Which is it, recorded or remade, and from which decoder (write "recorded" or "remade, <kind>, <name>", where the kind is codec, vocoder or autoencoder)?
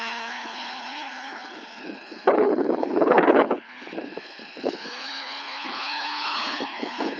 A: remade, codec, HILCodec